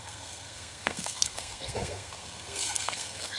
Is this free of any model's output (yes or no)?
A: no